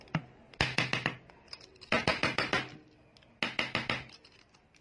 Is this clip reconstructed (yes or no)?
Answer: no